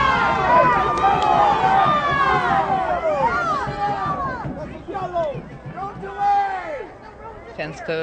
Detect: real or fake real